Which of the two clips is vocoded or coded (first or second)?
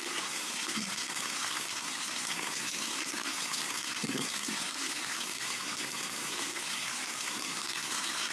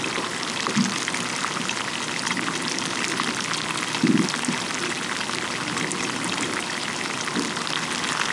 first